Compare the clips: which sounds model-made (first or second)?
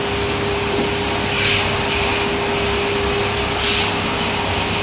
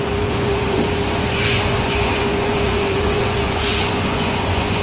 second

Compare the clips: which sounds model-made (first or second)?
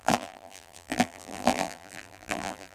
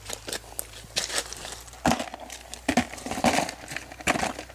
first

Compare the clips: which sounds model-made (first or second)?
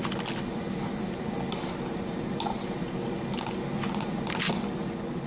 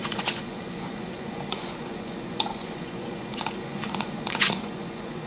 second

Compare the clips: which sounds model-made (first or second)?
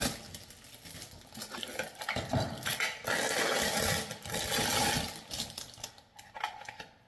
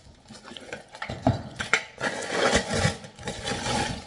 second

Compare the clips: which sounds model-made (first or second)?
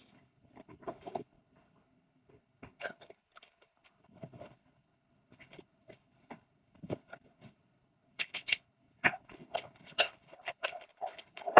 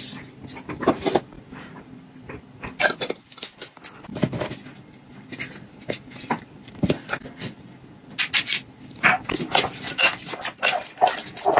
first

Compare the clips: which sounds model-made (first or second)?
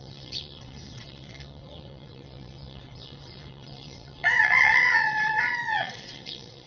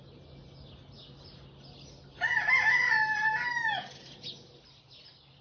first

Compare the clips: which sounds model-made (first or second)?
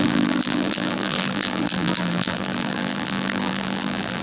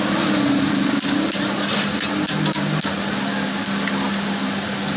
first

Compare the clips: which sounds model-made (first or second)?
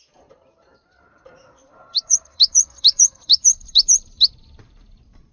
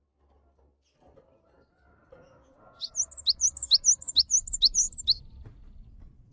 first